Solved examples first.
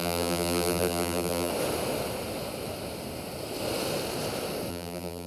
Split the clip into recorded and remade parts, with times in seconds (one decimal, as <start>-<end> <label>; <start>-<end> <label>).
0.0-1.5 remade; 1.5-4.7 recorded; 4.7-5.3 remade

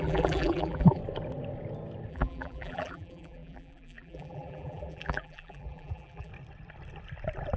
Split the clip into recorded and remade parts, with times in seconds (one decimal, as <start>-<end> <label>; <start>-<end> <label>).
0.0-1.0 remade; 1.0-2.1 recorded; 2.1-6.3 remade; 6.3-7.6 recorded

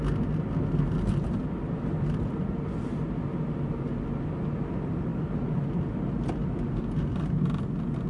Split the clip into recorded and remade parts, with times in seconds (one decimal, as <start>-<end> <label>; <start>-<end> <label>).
0.0-1.4 recorded; 1.4-3.0 remade; 3.0-8.1 recorded